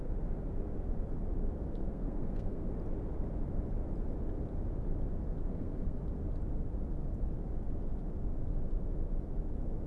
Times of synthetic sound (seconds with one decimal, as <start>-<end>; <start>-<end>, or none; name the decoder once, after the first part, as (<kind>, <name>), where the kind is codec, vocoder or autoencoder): 1.8-2.7 (codec, SNAC); 5.5-6.0